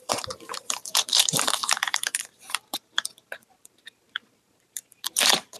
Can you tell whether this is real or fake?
fake